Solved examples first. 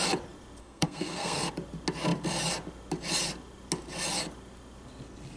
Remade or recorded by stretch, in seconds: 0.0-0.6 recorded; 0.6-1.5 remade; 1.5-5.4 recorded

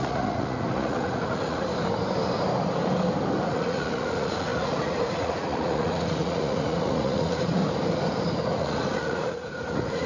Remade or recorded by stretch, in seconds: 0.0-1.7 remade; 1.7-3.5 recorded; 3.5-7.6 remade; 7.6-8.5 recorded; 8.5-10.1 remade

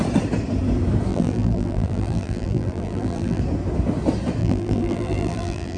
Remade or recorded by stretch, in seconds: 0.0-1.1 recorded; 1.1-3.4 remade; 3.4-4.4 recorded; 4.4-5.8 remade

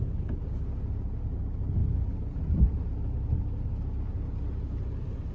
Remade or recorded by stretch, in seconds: 0.0-5.3 recorded